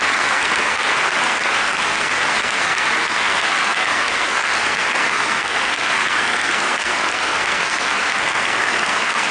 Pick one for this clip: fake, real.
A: fake